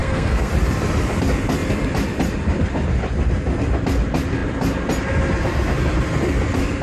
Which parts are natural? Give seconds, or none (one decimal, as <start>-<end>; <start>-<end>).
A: 0.5-6.8